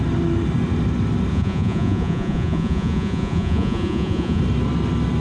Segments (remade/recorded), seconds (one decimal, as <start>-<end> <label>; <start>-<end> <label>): 0.0-1.3 recorded; 1.3-4.4 remade; 4.4-5.2 recorded